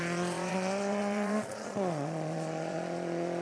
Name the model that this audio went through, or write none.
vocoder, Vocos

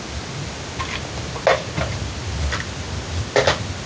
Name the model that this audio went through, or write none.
none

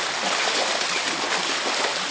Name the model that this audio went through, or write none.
none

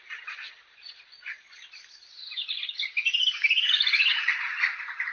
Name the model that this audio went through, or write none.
none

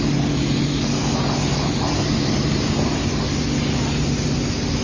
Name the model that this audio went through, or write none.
none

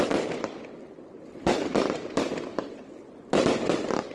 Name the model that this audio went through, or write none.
none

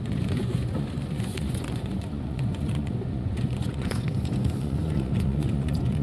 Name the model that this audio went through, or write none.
vocoder, Vocos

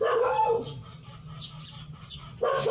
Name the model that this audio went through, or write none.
none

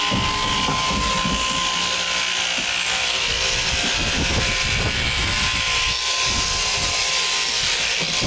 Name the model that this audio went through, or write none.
none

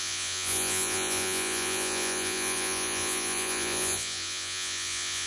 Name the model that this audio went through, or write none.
vocoder, Vocos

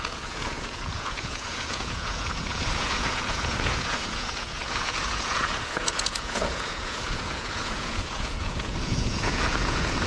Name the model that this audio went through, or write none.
vocoder, Vocos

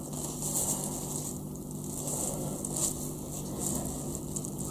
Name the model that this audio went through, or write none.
none